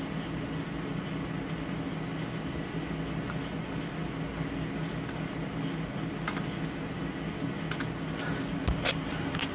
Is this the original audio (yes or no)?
yes